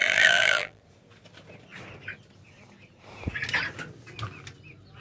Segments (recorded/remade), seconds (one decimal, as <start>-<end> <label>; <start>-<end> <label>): 0.0-0.8 remade; 0.8-5.0 recorded